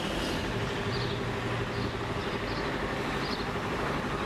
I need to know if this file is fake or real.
real